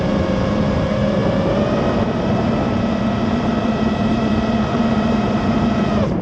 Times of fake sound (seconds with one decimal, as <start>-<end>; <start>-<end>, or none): 0.0-6.2